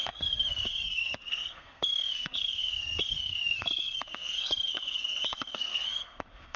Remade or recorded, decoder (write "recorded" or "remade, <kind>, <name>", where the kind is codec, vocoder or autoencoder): remade, codec, SNAC